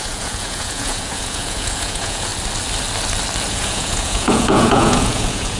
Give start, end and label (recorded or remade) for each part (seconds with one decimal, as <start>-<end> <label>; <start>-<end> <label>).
0.0-2.3 remade; 2.3-3.5 recorded; 3.5-5.6 remade